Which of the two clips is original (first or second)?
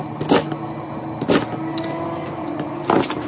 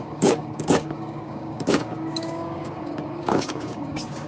first